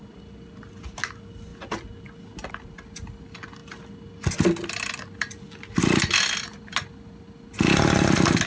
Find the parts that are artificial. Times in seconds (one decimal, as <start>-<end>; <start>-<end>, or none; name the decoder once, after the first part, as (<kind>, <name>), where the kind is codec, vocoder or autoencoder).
none